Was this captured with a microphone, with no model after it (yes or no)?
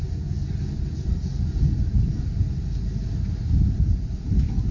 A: yes